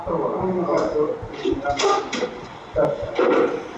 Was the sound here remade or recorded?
recorded